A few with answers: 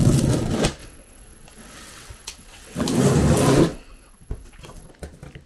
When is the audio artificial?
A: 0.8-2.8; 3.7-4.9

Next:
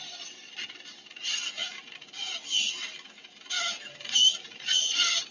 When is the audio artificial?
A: none

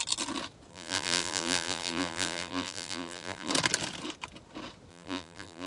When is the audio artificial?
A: 0.7-3.5; 4.9-5.7